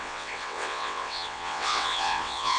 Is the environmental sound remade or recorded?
remade